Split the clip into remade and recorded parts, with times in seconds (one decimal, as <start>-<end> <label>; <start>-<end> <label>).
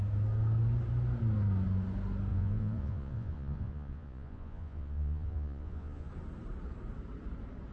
0.0-2.3 recorded; 2.3-6.1 remade; 6.1-7.7 recorded